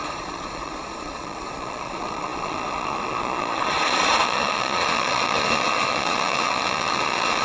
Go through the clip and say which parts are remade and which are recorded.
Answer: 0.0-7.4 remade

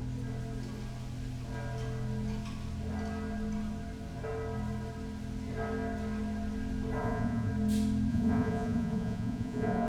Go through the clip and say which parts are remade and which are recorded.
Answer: 0.0-7.0 recorded; 7.0-7.5 remade; 7.5-8.1 recorded; 8.1-9.9 remade

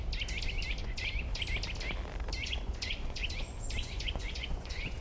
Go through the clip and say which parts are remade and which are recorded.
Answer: 0.0-0.8 recorded; 0.8-1.4 remade; 1.4-2.4 recorded; 2.4-5.0 remade